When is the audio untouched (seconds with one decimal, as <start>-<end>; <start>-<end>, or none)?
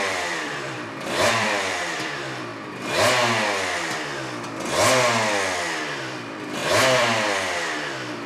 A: 2.5-6.0